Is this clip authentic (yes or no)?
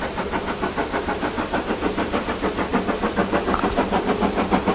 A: yes